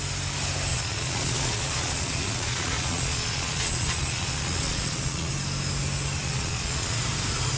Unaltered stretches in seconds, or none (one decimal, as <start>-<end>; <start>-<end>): 0.0-0.7; 5.3-6.2; 7.0-7.6